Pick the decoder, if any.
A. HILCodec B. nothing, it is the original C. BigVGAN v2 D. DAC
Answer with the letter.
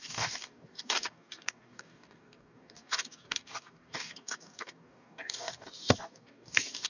D